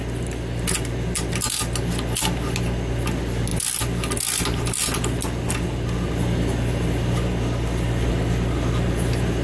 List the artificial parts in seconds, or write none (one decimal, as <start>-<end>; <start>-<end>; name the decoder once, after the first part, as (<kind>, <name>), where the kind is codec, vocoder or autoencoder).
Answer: none

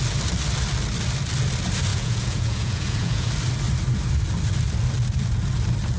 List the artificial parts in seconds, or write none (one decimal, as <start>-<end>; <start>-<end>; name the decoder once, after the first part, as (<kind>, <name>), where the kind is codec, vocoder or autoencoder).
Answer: 1.9-3.3 (vocoder, Vocos)

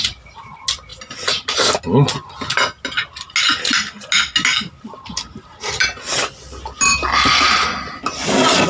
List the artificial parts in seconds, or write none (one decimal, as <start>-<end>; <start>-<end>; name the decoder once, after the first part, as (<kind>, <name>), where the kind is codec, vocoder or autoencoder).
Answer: none

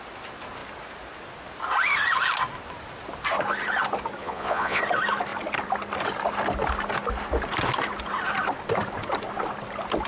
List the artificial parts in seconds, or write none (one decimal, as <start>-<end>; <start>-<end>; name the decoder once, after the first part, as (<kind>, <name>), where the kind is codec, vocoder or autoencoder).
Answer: 4.2-4.8 (vocoder, Vocos)

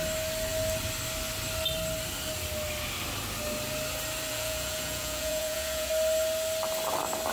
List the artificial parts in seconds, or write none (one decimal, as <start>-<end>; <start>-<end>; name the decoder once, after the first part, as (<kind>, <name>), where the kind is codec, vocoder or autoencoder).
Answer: 4.3-5.9 (vocoder, Vocos)

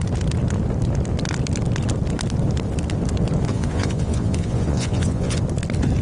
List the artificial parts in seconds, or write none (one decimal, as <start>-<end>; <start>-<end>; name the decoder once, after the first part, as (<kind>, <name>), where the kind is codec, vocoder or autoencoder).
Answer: 3.5-5.4 (vocoder, Vocos)

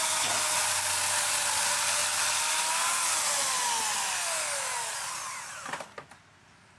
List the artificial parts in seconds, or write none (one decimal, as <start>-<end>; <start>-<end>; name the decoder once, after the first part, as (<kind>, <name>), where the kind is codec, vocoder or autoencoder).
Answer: none